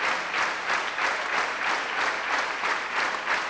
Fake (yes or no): no